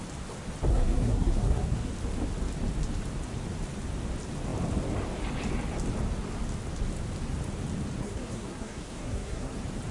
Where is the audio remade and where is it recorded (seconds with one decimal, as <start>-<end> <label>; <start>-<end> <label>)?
0.0-0.7 recorded; 0.7-1.9 remade; 1.9-8.0 recorded; 8.0-9.5 remade; 9.5-9.9 recorded